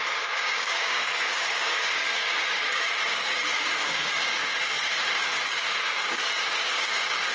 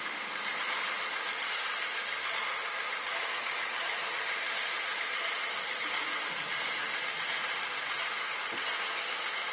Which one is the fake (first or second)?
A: first